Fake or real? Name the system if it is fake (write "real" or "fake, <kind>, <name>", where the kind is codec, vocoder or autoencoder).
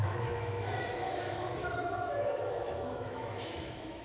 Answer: fake, autoencoder, DAC-VAE